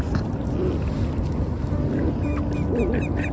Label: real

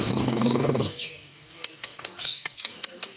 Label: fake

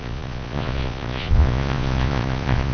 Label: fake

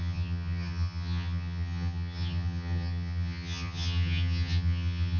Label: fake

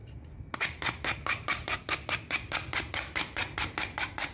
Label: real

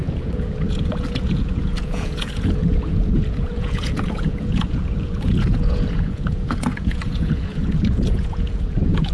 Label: fake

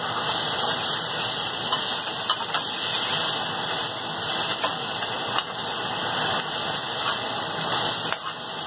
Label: real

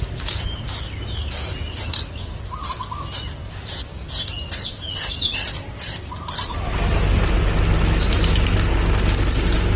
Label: real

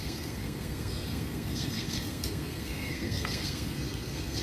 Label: fake